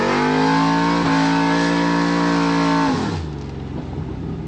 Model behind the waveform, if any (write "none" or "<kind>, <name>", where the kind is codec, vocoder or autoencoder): none